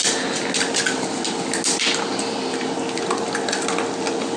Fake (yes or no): no